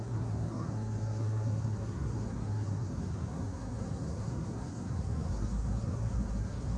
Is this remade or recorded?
remade